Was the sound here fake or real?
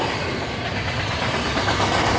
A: fake